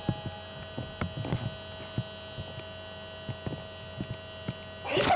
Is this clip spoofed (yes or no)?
no